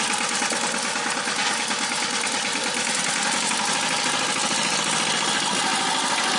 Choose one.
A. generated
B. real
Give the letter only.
B